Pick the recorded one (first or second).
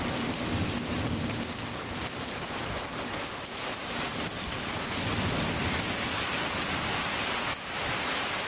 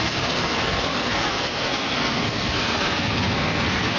first